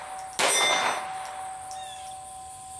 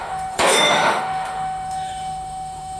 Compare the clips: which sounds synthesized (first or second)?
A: second